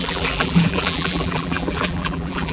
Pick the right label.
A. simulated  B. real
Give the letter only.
A